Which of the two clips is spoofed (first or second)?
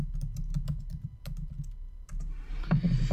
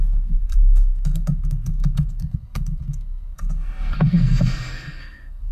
second